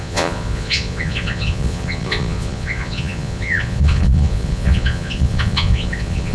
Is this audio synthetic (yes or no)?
yes